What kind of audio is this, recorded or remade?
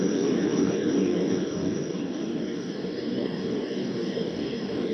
remade